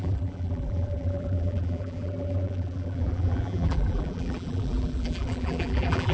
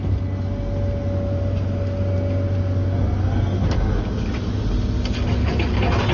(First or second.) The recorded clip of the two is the second